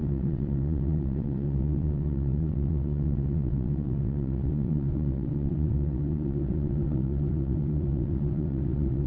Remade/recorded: remade